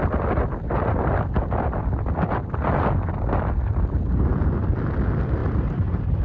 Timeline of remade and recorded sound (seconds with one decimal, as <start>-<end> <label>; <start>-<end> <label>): 0.0-5.4 recorded; 5.4-6.2 remade